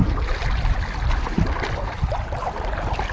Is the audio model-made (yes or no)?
no